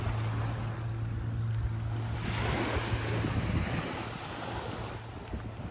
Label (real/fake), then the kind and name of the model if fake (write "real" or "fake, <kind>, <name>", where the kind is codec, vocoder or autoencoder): real